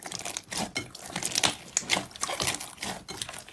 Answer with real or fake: real